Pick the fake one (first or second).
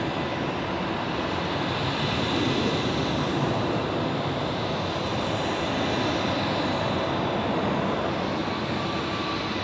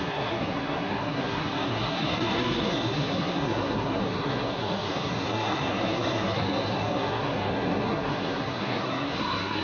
second